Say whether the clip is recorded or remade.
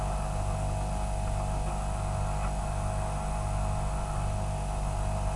recorded